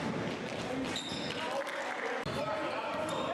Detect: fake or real real